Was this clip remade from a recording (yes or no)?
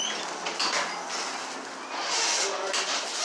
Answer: no